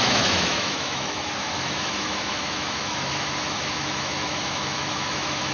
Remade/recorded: remade